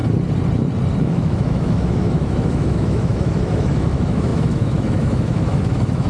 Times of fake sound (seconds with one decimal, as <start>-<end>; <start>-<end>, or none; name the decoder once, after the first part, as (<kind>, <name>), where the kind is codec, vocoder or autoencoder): 1.0-6.1 (autoencoder, DAC-VAE)